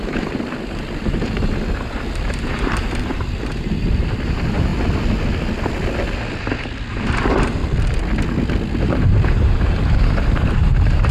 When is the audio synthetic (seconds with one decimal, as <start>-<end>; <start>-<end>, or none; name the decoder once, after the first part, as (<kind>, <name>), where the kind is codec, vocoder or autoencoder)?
0.0-4.7 (vocoder, BigVGAN v2); 6.9-7.6; 8.8-11.1